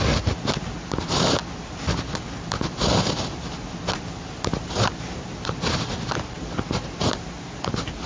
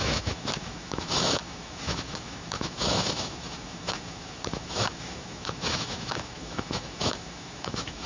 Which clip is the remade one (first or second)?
second